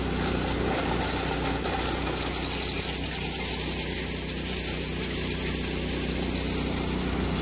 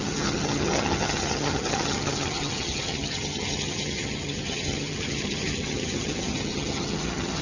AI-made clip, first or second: second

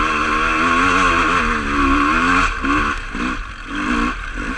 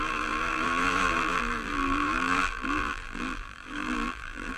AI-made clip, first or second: second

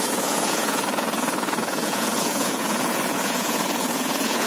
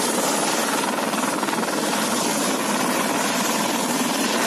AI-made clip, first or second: first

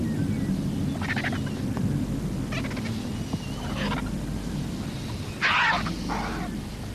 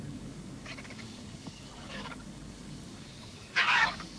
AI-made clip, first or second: second